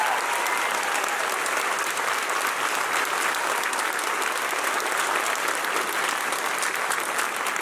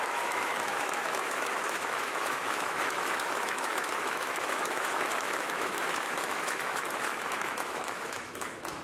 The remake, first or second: second